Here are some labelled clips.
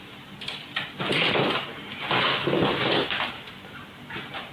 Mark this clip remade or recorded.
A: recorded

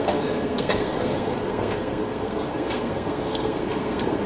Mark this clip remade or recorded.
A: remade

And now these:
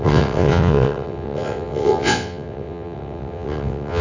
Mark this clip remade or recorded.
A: remade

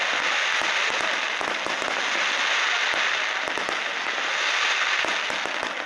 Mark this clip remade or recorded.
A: recorded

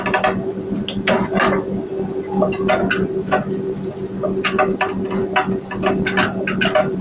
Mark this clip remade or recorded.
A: recorded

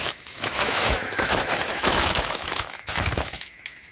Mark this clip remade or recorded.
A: remade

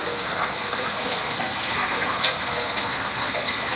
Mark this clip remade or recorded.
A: remade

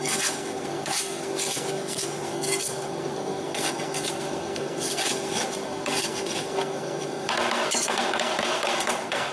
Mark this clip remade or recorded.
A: remade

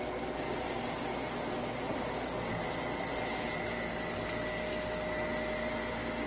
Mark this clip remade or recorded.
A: recorded